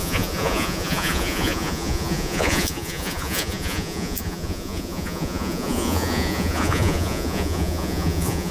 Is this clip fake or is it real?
fake